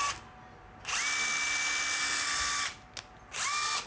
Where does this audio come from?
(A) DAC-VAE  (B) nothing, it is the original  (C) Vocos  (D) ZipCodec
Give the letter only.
B